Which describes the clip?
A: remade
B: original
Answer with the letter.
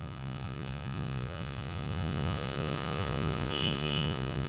A